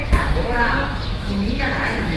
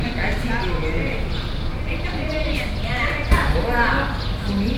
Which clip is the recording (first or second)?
second